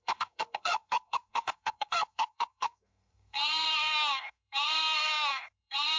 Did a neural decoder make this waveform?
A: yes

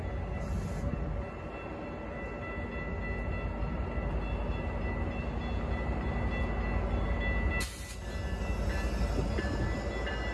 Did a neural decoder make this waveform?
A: no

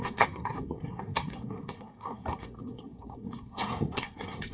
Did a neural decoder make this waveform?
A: yes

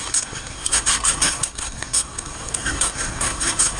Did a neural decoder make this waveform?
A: yes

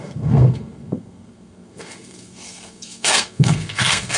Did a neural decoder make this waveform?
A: yes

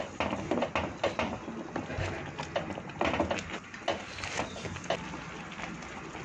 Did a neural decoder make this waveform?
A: no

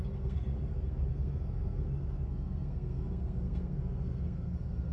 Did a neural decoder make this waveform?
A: yes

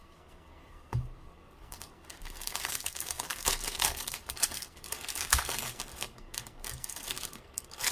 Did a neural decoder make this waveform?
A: yes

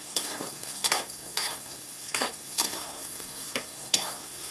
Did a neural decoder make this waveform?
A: yes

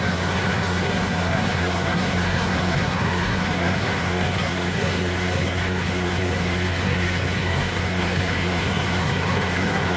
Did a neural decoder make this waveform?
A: yes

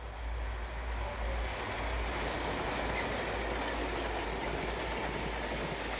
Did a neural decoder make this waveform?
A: no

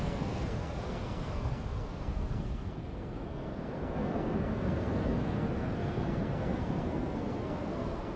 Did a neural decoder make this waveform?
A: yes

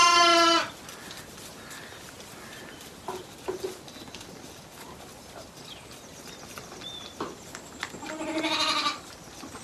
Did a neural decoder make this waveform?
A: no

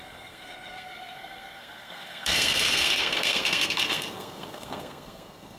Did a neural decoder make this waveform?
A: yes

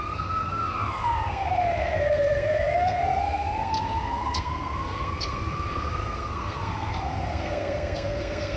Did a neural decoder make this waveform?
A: yes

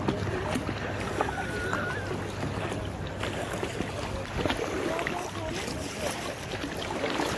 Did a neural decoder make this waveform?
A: no